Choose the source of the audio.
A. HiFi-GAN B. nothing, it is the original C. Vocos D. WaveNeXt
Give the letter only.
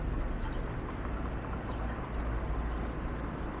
B